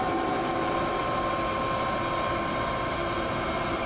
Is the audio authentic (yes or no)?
yes